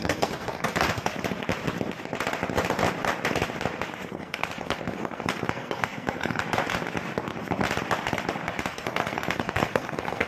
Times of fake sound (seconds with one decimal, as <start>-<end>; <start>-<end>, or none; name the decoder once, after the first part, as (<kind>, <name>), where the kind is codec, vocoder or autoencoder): 0.0-1.1 (codec, SNAC); 4.1-6.4; 8.6-10.3